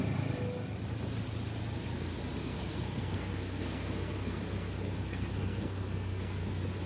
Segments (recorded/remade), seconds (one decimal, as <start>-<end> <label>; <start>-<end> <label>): 0.0-2.4 recorded; 2.4-6.5 remade; 6.5-6.9 recorded